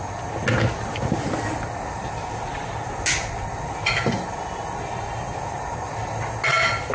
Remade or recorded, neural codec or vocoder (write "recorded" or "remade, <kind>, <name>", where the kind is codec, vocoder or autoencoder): recorded